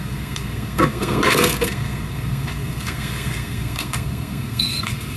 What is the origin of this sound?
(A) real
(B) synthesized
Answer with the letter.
B